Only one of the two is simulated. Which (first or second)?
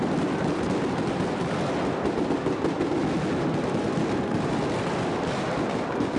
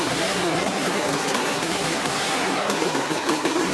second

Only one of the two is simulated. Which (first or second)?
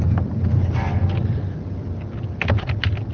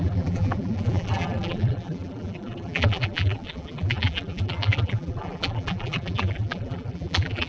second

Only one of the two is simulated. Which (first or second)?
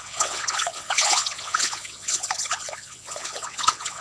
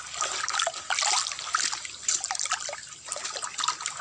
first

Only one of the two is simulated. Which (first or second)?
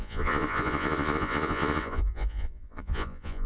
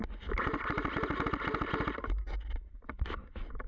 first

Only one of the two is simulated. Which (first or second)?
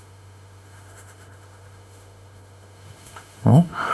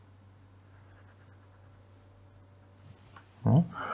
first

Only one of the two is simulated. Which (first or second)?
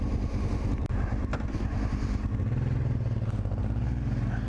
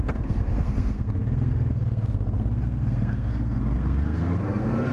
second